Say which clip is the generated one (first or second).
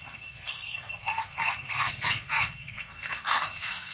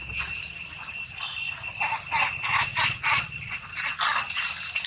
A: first